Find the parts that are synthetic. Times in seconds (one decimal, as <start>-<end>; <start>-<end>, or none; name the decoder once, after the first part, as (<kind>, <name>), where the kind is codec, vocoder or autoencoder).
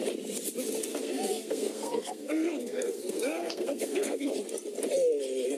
0.9-4.3 (codec, SNAC)